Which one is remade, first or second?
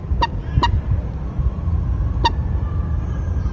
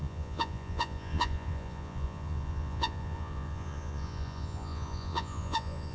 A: second